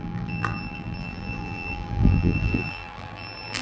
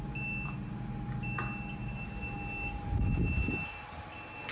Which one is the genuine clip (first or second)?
second